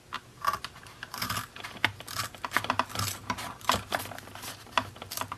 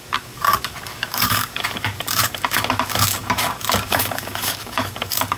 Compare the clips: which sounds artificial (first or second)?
second